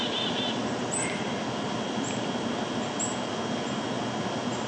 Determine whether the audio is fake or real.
real